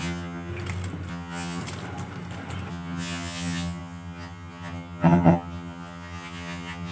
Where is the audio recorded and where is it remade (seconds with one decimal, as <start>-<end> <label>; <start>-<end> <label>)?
0.0-0.5 remade; 0.5-1.1 recorded; 1.1-1.6 remade; 1.6-2.7 recorded; 2.7-6.9 remade